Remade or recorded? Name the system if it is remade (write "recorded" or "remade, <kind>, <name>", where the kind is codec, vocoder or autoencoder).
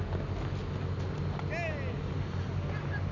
recorded